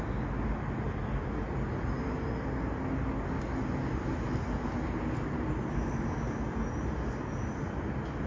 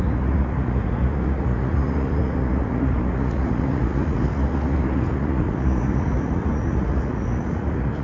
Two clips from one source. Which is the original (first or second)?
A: first